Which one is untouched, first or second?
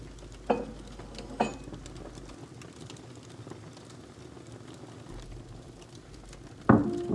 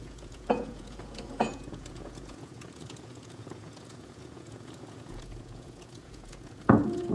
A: first